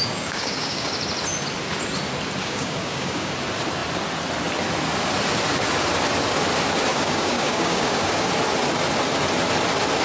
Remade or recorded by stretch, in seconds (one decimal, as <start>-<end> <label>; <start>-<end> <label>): 0.0-0.9 remade; 0.9-2.4 recorded; 2.4-3.3 remade; 3.3-6.9 recorded; 6.9-8.3 remade; 8.3-10.0 recorded